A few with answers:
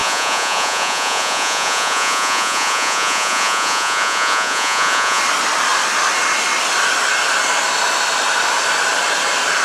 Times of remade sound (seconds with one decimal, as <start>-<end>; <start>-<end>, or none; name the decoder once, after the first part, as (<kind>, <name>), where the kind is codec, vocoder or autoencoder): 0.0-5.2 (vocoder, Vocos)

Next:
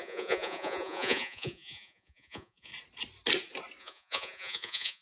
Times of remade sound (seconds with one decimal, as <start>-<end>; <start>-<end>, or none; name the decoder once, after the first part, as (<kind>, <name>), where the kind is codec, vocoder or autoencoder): 0.0-2.7 (vocoder, Vocos); 3.8-5.0

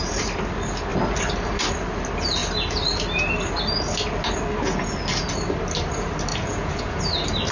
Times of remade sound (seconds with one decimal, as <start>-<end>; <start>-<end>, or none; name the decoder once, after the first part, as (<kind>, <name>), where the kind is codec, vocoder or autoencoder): 6.3-7.0 (vocoder, Vocos)